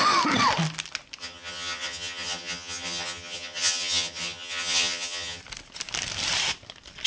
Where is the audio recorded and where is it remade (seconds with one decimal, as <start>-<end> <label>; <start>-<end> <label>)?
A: 0.0-1.2 recorded; 1.2-5.4 remade; 5.4-7.1 recorded